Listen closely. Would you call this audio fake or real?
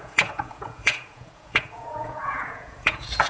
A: fake